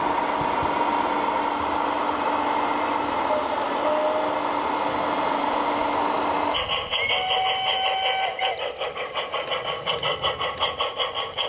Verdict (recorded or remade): recorded